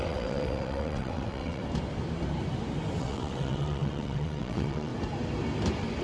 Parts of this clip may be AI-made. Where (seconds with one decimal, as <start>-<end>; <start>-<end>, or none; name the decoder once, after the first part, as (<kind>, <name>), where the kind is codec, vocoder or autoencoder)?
0.0-1.6 (vocoder, WaveNeXt); 3.0-4.9